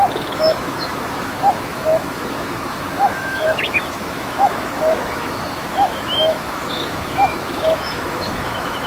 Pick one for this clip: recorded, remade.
remade